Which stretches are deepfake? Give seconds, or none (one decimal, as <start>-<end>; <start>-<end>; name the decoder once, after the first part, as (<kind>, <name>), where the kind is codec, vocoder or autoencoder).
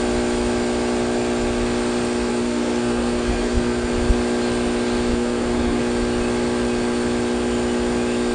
2.3-3.9 (codec, SNAC); 5.1-5.8